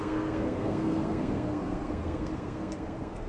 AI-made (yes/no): yes